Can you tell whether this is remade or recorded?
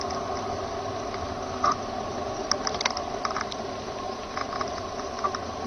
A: recorded